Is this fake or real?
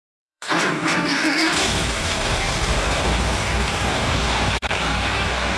fake